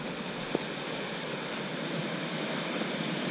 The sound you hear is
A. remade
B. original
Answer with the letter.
B